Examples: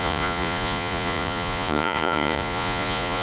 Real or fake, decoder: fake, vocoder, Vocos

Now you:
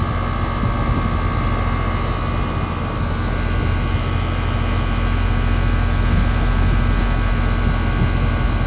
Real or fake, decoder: real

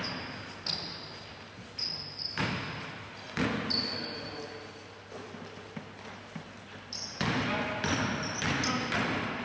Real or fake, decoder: real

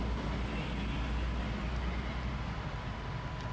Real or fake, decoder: real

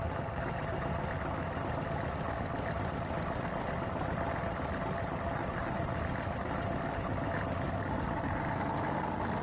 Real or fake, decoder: real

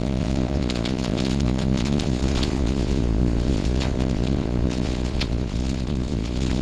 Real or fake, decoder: fake, vocoder, Vocos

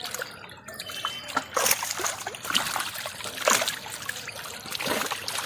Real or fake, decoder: real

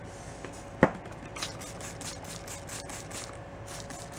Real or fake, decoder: real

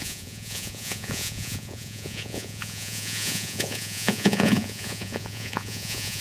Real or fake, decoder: fake, vocoder, Vocos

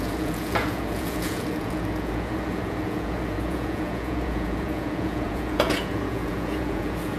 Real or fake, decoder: fake, vocoder, Vocos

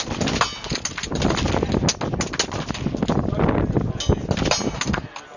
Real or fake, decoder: real